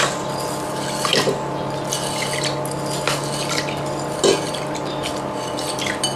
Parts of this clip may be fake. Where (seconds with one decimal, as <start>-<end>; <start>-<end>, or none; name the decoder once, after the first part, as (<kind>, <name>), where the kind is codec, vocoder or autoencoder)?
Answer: none